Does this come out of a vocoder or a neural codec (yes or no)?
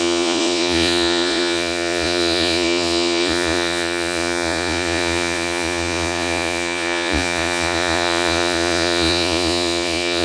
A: yes